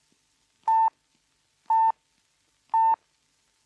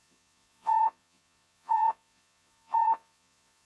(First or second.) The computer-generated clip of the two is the second